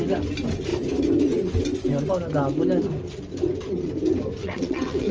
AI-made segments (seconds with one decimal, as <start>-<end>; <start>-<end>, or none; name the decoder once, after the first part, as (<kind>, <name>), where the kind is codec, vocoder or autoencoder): 4.4-5.1 (vocoder, WaveNeXt)